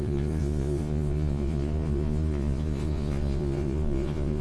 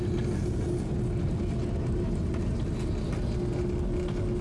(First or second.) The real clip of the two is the second